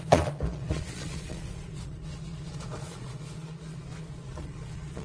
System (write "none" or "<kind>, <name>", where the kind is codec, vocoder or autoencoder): vocoder, Vocos